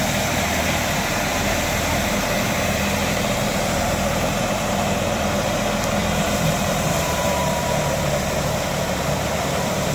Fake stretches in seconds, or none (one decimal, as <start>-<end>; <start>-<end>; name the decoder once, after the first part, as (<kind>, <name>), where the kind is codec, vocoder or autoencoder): 1.3-5.5 (vocoder, BigVGAN v2); 6.0-7.8